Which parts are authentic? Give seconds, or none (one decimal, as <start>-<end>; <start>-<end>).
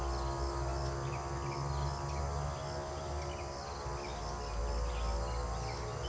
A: 0.0-6.1